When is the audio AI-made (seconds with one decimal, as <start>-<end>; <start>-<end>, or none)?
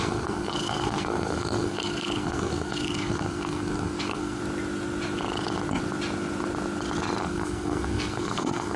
0.0-4.4; 7.2-8.8